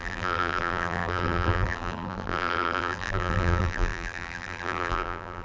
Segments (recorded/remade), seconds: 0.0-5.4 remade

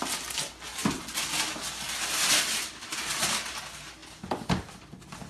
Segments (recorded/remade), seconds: 0.0-5.3 recorded

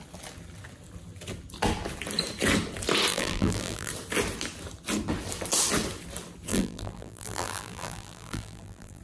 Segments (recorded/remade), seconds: 0.0-3.1 recorded; 3.1-3.9 remade; 3.9-6.5 recorded; 6.5-9.0 remade